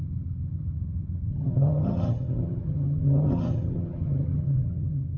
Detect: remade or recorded remade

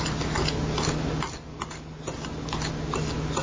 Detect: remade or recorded recorded